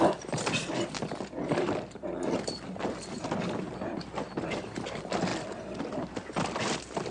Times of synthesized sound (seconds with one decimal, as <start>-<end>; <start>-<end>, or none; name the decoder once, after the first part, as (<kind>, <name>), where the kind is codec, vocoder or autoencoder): 0.0-5.3 (vocoder, BigVGAN v2); 5.8-7.1